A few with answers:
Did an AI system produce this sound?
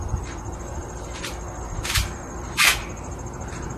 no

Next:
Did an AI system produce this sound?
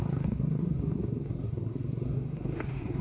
yes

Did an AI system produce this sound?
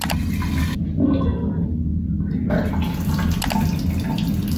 no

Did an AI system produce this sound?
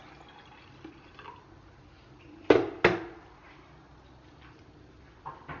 no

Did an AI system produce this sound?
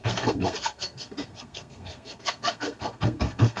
yes